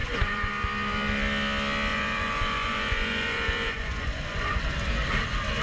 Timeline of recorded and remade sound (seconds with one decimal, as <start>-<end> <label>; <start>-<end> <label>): 0.0-0.5 remade; 0.5-1.9 recorded; 1.9-4.7 remade; 4.7-5.6 recorded